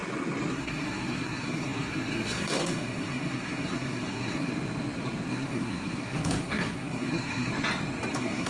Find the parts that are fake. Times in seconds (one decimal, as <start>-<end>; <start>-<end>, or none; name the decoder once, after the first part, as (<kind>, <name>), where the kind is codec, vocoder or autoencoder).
0.5-4.5 (codec, SNAC); 5.3-7.5; 8.1-8.5